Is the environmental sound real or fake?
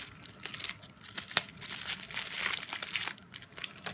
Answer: real